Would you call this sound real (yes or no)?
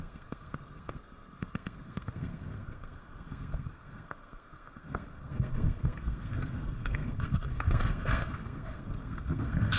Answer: no